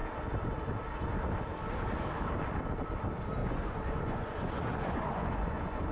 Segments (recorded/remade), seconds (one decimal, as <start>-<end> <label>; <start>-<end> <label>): 0.0-3.4 recorded; 3.4-5.9 remade